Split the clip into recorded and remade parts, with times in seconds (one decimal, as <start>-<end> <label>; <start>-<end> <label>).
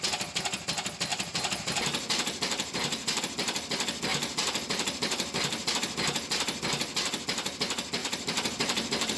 0.0-1.1 recorded; 1.1-3.2 remade; 3.2-4.1 recorded; 4.1-5.7 remade; 5.7-8.0 recorded; 8.0-9.2 remade